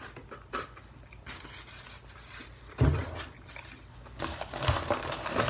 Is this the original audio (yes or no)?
yes